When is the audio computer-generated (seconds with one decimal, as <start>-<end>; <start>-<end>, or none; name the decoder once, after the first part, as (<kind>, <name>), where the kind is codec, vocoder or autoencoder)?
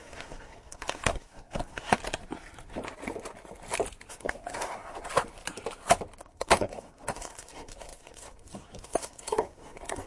0.0-2.0 (codec, SNAC); 4.1-5.1; 6.2-10.1